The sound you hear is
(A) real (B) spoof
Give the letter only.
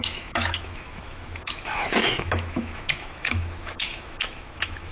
B